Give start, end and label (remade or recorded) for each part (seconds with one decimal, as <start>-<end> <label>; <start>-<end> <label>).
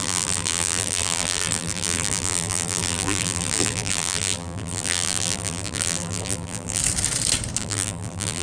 0.0-6.8 remade; 6.8-7.6 recorded; 7.6-8.4 remade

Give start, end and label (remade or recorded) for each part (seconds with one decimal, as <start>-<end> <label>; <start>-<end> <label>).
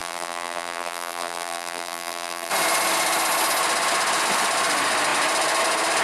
0.0-2.5 remade; 2.5-6.0 recorded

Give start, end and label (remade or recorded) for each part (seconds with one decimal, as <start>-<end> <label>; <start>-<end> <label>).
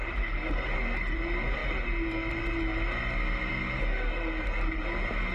0.0-5.3 recorded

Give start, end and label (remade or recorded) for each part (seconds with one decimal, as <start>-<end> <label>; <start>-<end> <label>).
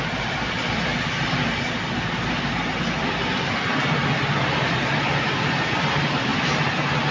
0.0-0.9 remade; 0.9-2.4 recorded; 2.4-6.3 remade; 6.3-7.1 recorded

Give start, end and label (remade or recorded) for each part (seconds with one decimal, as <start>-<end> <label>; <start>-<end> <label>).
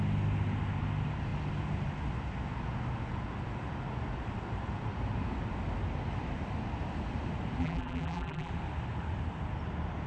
0.0-7.6 recorded; 7.6-8.5 remade; 8.5-10.1 recorded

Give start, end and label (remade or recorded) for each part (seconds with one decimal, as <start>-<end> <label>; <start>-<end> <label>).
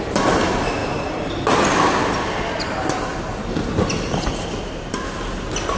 0.0-0.8 recorded; 0.8-1.3 remade; 1.3-5.8 recorded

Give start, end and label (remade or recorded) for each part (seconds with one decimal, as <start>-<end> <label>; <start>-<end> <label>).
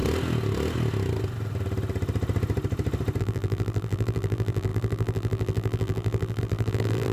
0.0-3.2 recorded; 3.2-7.1 remade